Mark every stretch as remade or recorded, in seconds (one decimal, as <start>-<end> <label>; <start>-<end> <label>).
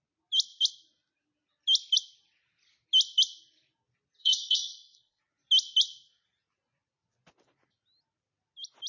0.0-4.2 recorded; 4.2-5.2 remade; 5.2-8.9 recorded